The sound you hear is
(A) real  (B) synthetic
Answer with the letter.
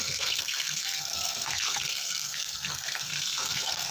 B